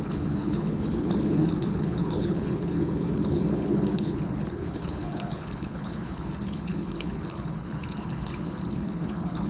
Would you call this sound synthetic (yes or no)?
yes